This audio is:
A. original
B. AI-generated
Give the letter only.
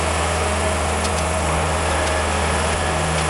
A